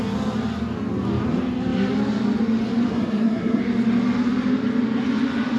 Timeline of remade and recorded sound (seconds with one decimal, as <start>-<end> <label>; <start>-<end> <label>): 0.0-2.9 recorded; 2.9-3.6 remade; 3.6-5.6 recorded